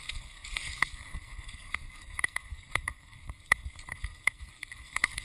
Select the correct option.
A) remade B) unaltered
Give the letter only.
A